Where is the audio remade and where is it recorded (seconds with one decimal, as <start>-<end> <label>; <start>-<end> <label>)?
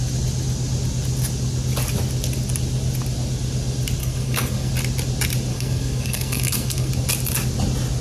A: 0.0-4.0 recorded; 4.0-4.7 remade; 4.7-5.5 recorded; 5.5-6.9 remade; 6.9-8.0 recorded